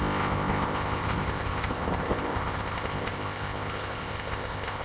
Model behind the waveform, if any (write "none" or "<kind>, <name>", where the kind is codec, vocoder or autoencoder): codec, ZipCodec